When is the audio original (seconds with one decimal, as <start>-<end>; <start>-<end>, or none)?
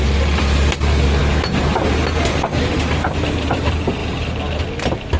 0.0-5.2